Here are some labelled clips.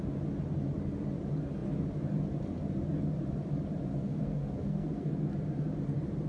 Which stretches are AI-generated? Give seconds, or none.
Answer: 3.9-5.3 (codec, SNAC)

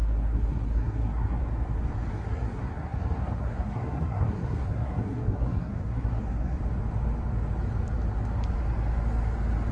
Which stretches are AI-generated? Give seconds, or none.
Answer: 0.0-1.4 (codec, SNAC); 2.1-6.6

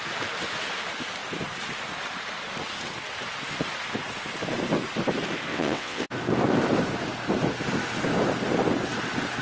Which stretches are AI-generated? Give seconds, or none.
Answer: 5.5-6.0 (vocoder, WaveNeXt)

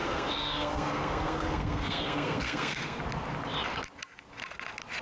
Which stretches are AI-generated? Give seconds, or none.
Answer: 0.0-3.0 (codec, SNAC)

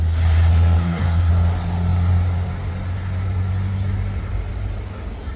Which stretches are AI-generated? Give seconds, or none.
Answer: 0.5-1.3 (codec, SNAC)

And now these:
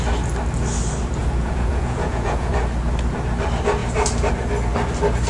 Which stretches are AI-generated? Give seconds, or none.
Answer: 1.2-2.5 (vocoder, Vocos)

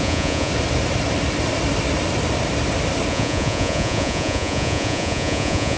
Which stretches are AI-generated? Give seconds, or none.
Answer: 0.0-0.5 (vocoder, Vocos); 3.1-5.8

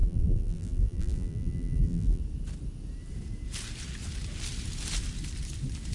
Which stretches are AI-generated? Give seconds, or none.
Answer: 0.0-2.2 (vocoder, BigVGAN v2)